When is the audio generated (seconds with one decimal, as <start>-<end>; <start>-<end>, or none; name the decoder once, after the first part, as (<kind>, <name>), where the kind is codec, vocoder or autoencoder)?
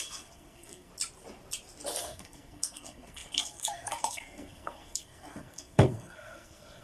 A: 0.0-0.9 (codec, SNAC); 2.0-6.8